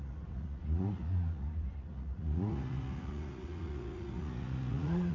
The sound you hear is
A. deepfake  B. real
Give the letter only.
A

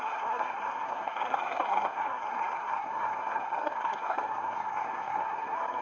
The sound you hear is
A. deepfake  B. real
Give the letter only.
A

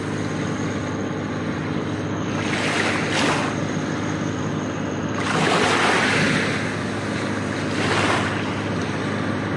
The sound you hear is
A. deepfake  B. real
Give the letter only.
B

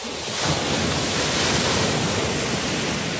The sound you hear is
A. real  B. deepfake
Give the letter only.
A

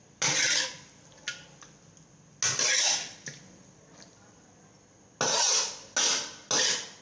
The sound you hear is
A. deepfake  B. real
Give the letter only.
B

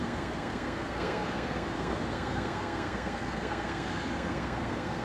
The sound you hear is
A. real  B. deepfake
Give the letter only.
B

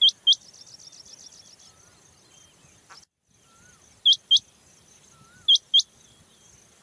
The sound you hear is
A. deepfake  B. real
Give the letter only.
B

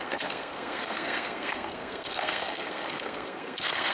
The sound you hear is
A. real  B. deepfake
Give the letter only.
B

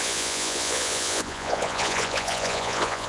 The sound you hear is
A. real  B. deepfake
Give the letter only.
B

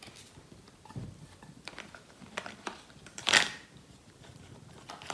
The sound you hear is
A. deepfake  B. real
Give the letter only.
A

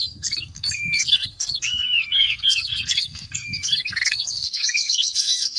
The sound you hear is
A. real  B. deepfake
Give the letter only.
B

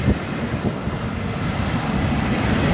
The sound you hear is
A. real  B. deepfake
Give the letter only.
B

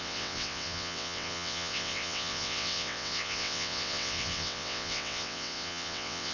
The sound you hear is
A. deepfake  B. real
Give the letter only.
A